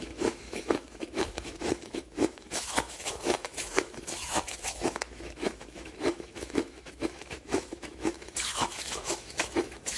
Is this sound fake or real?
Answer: fake